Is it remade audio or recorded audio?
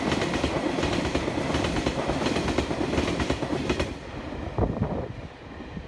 recorded